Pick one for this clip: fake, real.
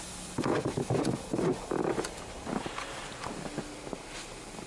real